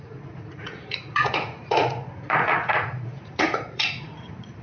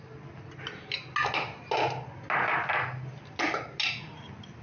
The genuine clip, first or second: second